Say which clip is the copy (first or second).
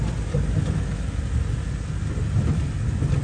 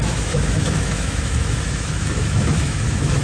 second